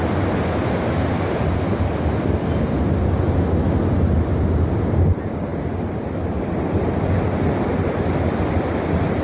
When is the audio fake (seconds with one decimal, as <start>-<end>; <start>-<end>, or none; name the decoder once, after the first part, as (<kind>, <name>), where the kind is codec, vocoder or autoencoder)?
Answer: none

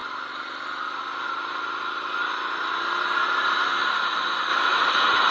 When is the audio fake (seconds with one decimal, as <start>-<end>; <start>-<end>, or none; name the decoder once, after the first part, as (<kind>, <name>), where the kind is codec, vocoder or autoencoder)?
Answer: 4.5-5.3 (vocoder, BigVGAN v2)

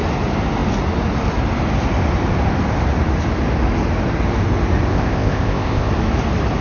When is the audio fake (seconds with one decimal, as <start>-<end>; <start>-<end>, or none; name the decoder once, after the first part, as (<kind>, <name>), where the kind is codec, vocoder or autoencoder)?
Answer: 4.9-5.9 (codec, ZipCodec)

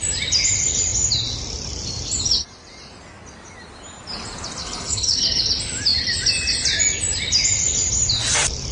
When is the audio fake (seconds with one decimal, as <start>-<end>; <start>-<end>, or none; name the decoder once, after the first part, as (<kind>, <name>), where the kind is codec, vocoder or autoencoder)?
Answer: 4.6-5.5 (codec, HILCodec)

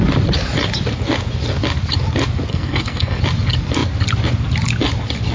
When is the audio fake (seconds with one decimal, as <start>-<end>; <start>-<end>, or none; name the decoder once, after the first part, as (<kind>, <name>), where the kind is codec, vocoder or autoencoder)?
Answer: 2.5-3.2 (codec, SNAC)

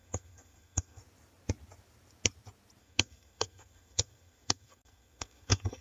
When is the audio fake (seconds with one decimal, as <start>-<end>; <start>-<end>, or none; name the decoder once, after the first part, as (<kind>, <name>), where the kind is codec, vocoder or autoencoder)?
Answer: 0.0-1.0 (codec, SNAC); 2.8-5.8